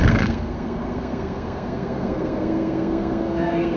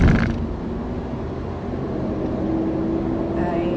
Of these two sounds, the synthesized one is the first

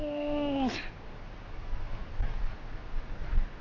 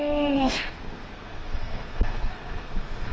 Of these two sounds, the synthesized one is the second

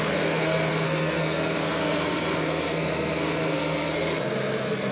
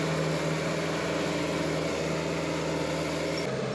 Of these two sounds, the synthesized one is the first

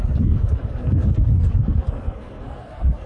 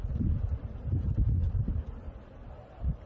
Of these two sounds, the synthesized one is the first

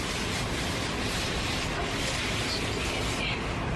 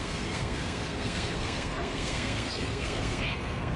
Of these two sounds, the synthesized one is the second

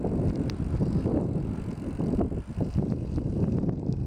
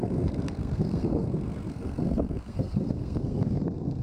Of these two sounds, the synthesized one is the second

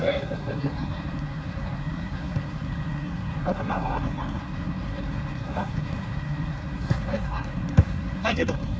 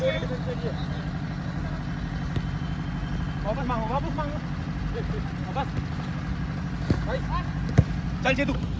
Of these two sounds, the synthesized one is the first